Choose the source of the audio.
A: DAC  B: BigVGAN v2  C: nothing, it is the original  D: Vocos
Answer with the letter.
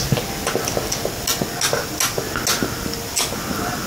C